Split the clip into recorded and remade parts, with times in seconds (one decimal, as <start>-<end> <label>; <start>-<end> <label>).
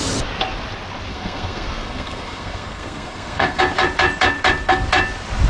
0.0-1.1 recorded; 1.1-3.6 remade; 3.6-5.5 recorded